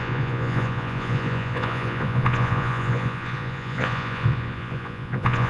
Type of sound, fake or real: fake